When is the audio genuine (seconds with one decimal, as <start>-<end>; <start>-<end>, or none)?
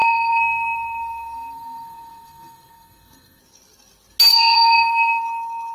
3.4-4.3; 5.2-5.7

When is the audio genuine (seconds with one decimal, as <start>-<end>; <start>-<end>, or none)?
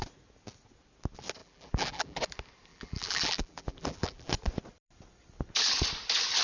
0.0-1.4; 2.2-2.7; 4.3-6.4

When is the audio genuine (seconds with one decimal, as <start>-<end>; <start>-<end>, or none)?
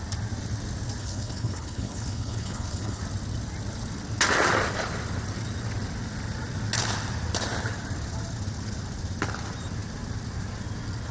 0.0-1.0; 3.0-11.1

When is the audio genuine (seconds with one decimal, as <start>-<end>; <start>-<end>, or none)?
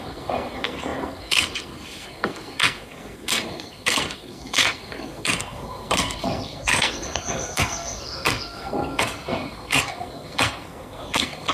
none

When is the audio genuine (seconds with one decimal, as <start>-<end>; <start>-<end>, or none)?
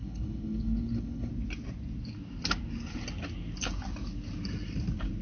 1.3-5.2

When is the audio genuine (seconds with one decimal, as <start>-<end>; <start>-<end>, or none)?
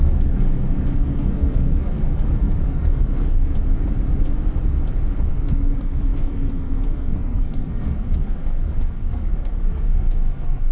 3.5-5.3